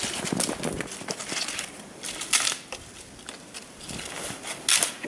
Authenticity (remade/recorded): recorded